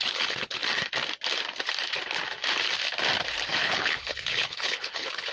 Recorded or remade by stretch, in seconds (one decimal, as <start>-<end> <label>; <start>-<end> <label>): 0.0-0.6 remade; 0.6-3.6 recorded; 3.6-5.3 remade